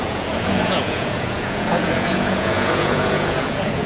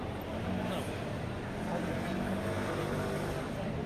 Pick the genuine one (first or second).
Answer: second